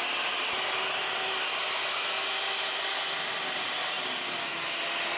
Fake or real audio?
real